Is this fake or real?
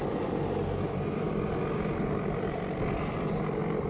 real